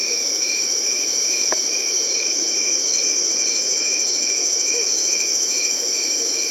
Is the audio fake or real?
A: fake